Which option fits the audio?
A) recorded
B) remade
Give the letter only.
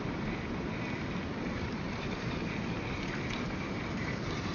A